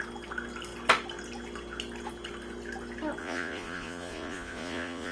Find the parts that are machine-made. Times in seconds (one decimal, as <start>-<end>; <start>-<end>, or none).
3.2-5.1